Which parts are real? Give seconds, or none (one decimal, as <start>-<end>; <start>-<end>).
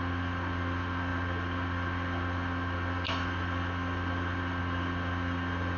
0.0-5.8